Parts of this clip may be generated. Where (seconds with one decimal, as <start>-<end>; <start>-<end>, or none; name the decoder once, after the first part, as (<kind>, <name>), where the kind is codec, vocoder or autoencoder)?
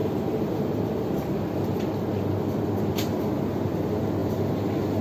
4.2-5.0 (vocoder, BigVGAN v2)